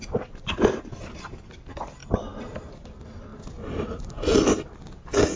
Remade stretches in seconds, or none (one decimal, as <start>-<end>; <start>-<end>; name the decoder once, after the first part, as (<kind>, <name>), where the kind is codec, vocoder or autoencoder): none